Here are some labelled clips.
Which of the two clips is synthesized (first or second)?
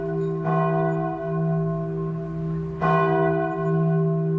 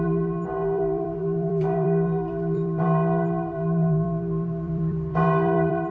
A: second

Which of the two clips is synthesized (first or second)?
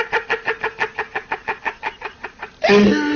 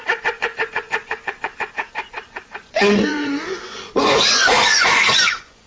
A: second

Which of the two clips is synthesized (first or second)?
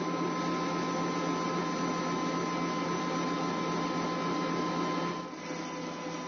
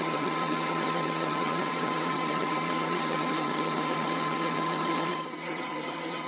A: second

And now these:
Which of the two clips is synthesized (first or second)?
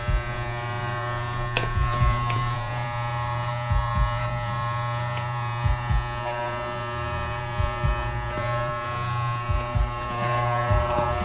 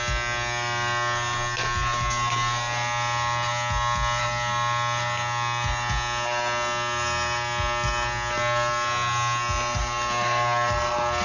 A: first